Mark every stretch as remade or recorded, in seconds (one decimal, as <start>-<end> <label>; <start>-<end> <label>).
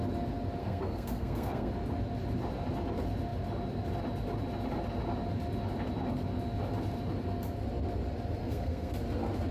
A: 0.0-0.6 recorded; 0.6-1.7 remade; 1.7-8.4 recorded; 8.4-8.9 remade; 8.9-9.5 recorded